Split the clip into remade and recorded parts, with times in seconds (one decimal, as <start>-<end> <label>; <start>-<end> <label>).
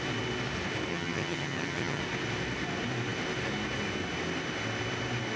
0.0-0.9 recorded; 0.9-2.0 remade; 2.0-5.4 recorded